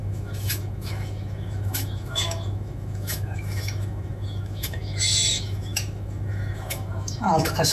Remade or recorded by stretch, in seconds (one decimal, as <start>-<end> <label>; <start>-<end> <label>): 0.0-7.7 remade